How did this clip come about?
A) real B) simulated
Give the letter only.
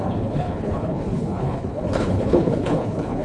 B